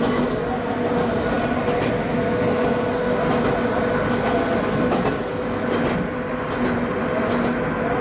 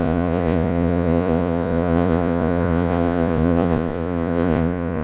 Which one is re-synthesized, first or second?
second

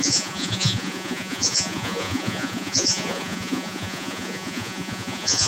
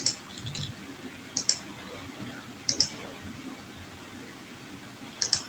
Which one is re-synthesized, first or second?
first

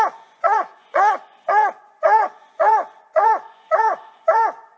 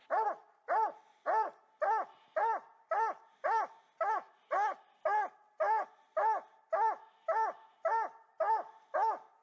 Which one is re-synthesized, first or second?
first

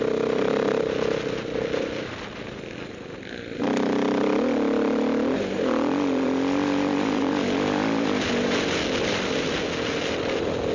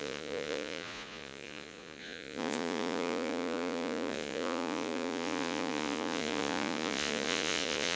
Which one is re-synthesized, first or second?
second